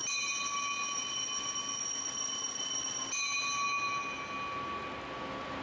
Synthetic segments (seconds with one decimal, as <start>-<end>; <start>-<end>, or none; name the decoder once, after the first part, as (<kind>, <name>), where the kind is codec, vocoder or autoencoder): none